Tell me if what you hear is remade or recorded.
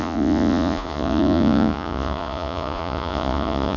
remade